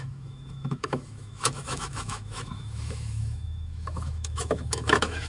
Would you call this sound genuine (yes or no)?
no